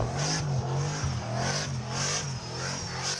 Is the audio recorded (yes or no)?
yes